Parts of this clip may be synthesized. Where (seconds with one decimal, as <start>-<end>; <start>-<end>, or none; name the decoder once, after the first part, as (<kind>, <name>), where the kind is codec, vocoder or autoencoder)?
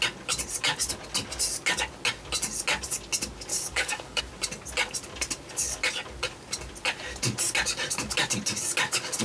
3.5-4.2 (codec, DAC)